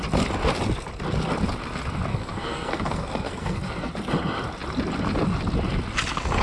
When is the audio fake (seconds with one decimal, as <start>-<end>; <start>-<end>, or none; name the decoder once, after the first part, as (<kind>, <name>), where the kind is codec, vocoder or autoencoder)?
2.1-3.9 (codec, SNAC)